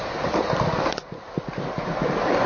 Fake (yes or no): no